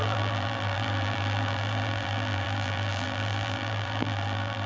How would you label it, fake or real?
fake